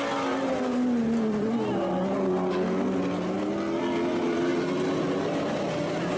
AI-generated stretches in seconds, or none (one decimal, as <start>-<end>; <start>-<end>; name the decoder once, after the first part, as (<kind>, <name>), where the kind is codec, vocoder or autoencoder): none